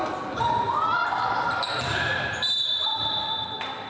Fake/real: real